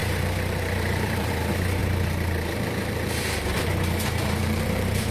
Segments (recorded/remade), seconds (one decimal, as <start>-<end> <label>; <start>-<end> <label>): 0.0-1.3 remade; 1.3-1.8 recorded; 1.8-5.1 remade